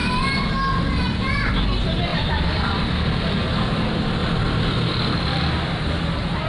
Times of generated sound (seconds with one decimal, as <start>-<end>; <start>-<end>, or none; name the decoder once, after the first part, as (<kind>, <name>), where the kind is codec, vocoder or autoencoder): 2.1-2.8 (vocoder, BigVGAN v2); 4.2-5.4